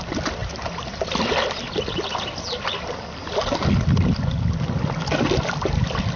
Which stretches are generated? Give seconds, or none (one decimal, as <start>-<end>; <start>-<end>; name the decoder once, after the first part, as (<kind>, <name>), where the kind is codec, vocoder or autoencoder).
0.4-1.2 (vocoder, BigVGAN v2)